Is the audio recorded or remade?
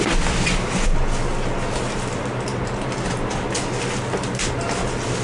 recorded